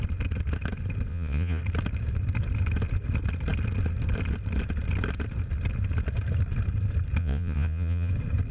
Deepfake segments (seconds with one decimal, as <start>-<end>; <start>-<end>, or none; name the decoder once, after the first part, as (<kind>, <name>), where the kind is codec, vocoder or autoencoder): 1.1-1.6 (vocoder, Vocos); 7.2-8.1